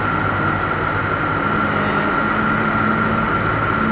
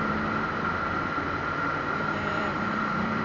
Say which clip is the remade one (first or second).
second